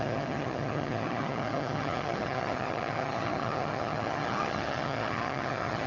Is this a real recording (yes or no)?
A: no